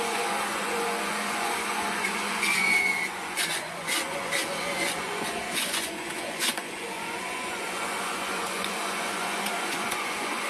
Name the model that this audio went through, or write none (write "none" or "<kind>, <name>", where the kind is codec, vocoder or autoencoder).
vocoder, Vocos